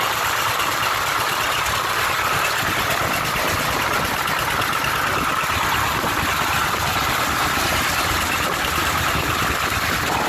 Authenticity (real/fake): real